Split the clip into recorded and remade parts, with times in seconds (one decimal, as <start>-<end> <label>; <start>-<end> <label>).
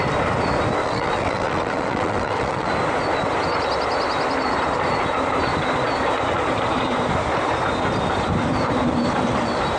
0.0-0.8 recorded; 0.8-2.7 remade; 2.7-9.8 recorded